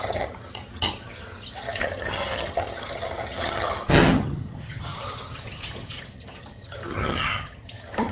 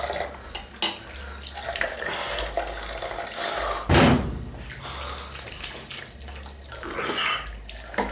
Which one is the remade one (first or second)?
first